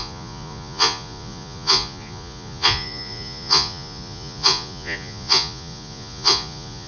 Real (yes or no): no